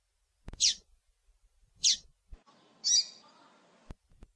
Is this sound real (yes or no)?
yes